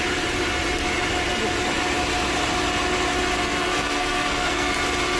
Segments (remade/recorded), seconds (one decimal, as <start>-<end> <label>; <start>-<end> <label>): 0.0-3.4 recorded; 3.4-4.7 remade; 4.7-5.2 recorded